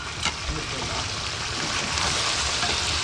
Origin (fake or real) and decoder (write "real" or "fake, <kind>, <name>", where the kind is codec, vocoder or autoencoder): real